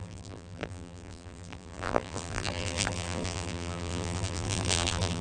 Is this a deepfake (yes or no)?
yes